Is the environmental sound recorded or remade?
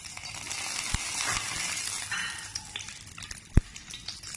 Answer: recorded